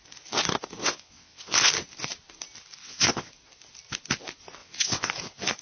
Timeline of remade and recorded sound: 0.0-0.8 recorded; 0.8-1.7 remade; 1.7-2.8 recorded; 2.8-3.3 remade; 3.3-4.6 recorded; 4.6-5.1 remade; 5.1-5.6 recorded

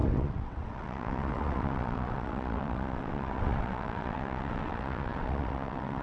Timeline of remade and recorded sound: 0.0-6.0 remade

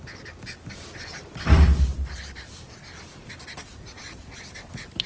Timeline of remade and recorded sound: 0.0-3.7 recorded; 3.7-4.4 remade; 4.4-5.1 recorded

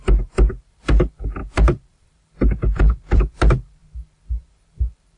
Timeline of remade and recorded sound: 0.0-5.2 remade

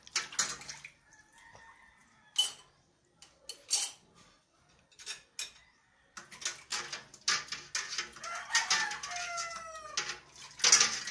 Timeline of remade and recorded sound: 0.0-11.1 recorded

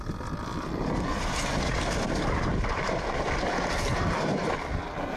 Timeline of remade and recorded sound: 0.0-2.5 recorded; 2.5-3.0 remade; 3.0-5.2 recorded

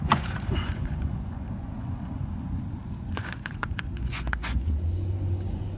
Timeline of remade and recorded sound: 0.0-5.8 remade